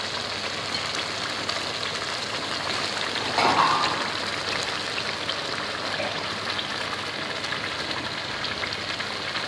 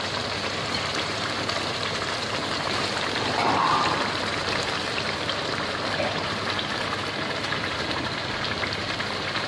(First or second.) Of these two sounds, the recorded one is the first